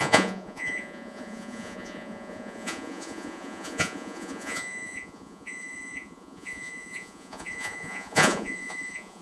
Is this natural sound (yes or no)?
no